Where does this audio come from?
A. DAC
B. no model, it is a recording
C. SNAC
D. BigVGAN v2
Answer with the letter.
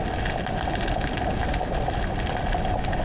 B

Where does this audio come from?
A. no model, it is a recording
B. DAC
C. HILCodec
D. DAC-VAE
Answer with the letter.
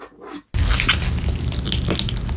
A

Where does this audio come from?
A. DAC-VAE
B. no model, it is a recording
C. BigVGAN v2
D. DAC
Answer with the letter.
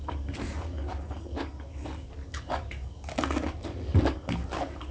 D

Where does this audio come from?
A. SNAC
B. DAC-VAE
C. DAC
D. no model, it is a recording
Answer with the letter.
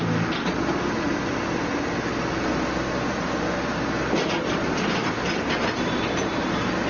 D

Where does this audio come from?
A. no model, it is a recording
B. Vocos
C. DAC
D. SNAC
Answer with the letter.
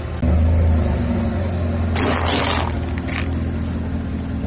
A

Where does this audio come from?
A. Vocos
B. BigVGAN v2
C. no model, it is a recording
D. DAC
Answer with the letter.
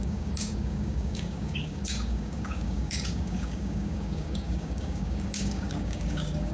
D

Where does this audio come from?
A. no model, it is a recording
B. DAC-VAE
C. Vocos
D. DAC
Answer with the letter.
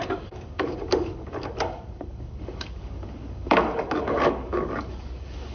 D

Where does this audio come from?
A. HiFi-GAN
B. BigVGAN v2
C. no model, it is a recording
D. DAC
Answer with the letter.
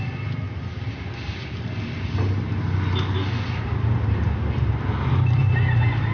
C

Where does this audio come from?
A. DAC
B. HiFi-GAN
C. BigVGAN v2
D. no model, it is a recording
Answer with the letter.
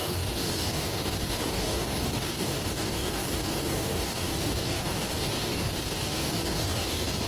A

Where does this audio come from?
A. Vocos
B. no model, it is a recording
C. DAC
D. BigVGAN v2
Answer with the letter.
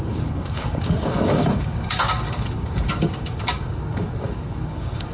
C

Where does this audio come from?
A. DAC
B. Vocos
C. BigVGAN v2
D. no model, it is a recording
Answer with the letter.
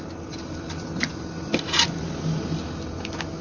D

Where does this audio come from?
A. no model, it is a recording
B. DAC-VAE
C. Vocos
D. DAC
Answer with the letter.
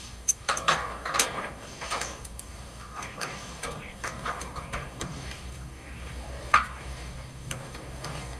D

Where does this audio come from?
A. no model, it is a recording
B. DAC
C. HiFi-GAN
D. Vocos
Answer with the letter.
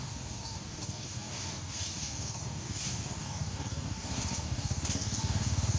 B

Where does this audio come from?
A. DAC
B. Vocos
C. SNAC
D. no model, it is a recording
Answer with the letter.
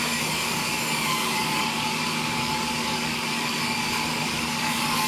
A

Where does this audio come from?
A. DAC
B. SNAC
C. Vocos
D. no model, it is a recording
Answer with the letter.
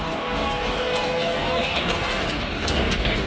A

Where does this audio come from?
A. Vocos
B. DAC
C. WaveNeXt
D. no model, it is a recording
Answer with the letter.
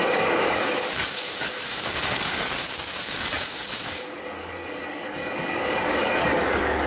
B